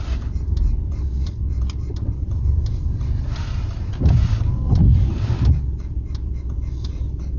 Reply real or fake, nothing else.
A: fake